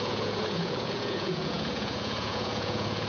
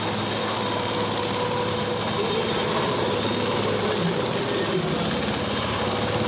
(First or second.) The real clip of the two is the second